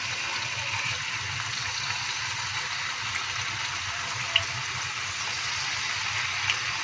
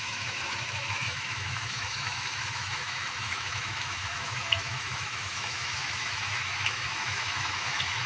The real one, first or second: first